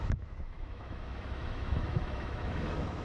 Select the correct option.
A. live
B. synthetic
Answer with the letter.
B